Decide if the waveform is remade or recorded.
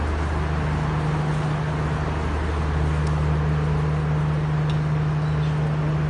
recorded